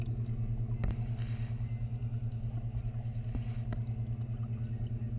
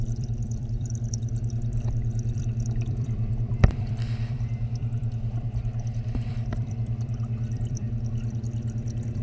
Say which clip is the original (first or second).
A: first